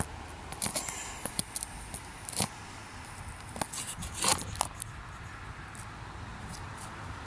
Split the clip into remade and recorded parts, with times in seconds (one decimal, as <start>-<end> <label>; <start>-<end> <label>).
0.0-0.7 recorded; 0.7-2.5 remade; 2.5-6.3 recorded; 6.3-7.3 remade